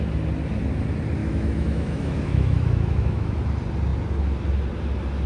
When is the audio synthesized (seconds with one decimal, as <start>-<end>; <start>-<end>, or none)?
1.2-3.4